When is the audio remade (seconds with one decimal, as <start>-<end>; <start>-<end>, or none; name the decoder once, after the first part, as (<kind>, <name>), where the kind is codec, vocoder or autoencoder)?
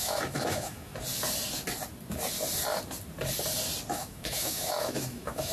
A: 0.0-0.9 (autoencoder, DAC-VAE); 3.9-5.5